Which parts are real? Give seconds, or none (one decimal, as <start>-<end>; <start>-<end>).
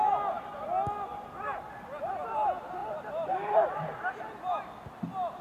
0.0-2.8; 4.1-5.4